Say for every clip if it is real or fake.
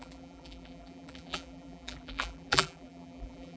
fake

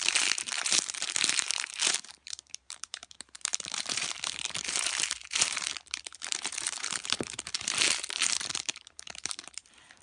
fake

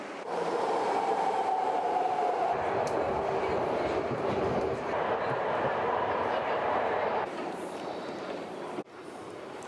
fake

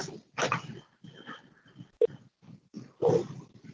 real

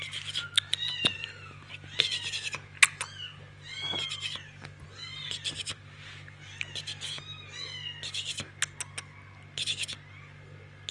real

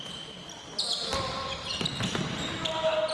real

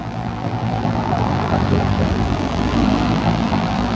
fake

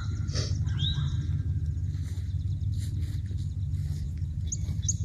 real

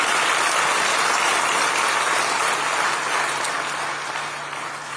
real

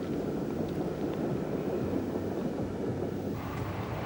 real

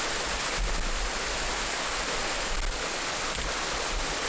real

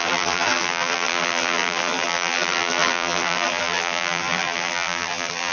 fake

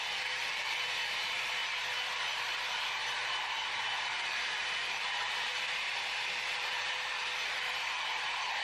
fake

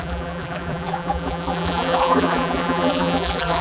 fake